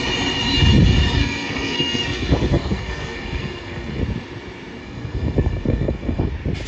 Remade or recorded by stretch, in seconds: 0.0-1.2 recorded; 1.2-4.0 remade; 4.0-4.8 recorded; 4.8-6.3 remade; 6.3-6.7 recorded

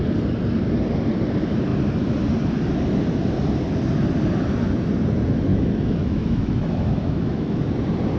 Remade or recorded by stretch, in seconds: 0.0-5.5 recorded; 5.5-7.6 remade; 7.6-8.2 recorded

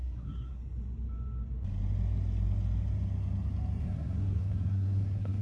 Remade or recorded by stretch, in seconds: 0.0-0.6 remade; 0.6-3.8 recorded; 3.8-5.4 remade

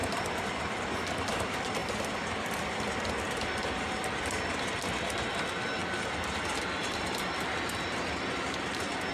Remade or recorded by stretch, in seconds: 0.0-9.1 recorded

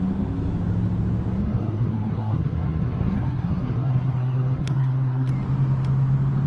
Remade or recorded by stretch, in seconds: 0.0-1.4 recorded; 1.4-5.3 remade; 5.3-6.5 recorded

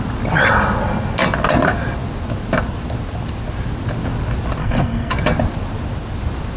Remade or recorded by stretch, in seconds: 0.0-4.6 recorded; 4.6-5.1 remade; 5.1-6.6 recorded

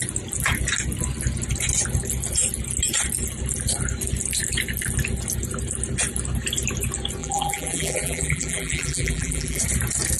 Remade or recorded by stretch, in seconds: 0.0-7.2 recorded; 7.2-9.6 remade; 9.6-10.2 recorded

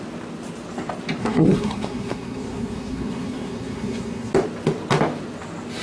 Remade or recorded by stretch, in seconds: 0.0-1.2 recorded; 1.2-4.3 remade; 4.3-5.8 recorded